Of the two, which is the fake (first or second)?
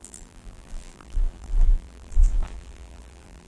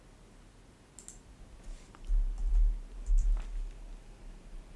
first